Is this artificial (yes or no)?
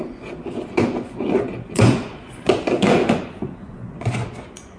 yes